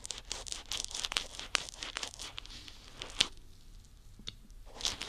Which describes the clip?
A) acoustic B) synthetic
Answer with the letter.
A